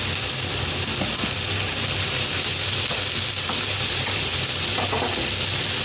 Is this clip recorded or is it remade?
recorded